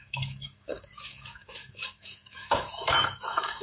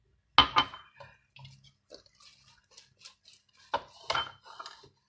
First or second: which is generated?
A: first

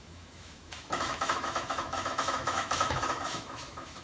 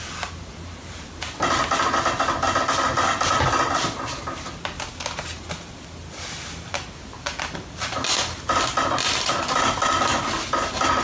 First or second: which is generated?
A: first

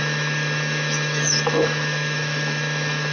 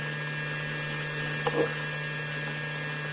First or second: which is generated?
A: first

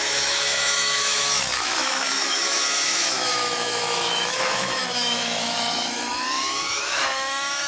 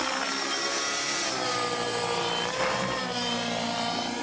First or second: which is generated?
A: first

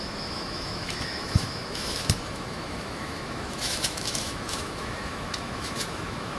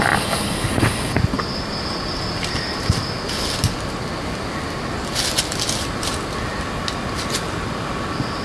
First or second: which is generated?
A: first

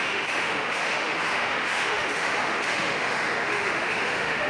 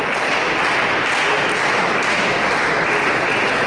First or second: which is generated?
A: first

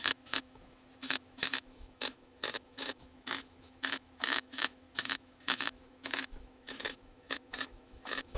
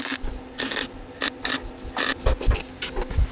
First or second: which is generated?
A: first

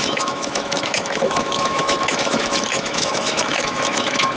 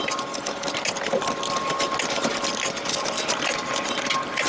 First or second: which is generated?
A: first